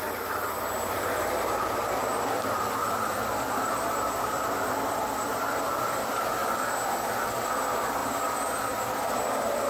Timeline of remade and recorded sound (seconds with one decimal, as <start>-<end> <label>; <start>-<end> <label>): 0.0-2.0 recorded; 2.0-6.3 remade; 6.3-8.0 recorded; 8.0-8.8 remade; 8.8-9.7 recorded